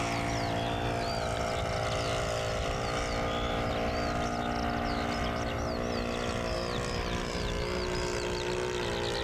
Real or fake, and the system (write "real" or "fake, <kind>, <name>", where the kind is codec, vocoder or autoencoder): real